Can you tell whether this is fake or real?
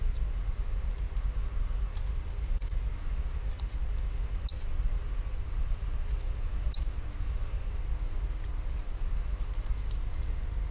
real